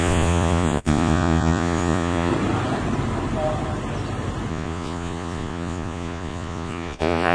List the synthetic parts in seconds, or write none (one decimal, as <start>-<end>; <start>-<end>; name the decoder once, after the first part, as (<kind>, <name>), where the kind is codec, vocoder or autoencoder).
0.0-2.3 (vocoder, Vocos); 4.5-7.3